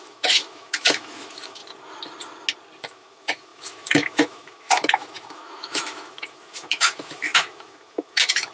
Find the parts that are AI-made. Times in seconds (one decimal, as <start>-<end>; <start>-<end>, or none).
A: 0.0-1.6; 2.8-8.5